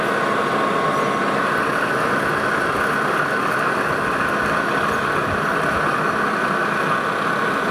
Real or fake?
real